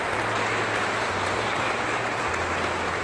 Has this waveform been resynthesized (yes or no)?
no